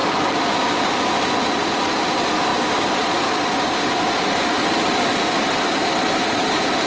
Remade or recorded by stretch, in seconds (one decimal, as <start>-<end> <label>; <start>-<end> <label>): 0.0-6.9 recorded